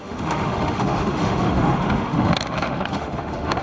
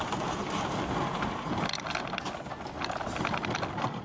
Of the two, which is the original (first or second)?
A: second